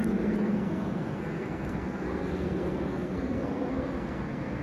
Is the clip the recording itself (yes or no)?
no